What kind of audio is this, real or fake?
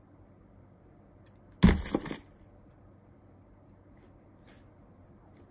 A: real